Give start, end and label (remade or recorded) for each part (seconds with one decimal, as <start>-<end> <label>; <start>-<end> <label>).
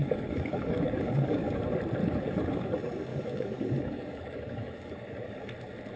0.0-1.6 remade; 1.6-2.0 recorded; 2.0-2.7 remade; 2.7-3.1 recorded; 3.1-5.5 remade; 5.5-6.0 recorded